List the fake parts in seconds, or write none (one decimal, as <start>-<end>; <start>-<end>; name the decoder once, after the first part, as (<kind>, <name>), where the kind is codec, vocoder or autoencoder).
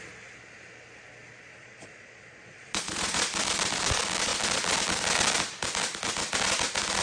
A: 1.6-3.2 (vocoder, Vocos)